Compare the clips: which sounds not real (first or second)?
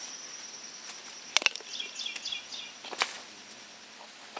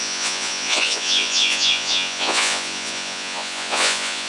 second